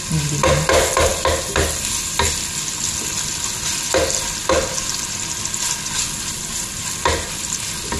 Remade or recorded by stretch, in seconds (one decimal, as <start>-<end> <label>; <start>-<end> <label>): 0.0-8.0 recorded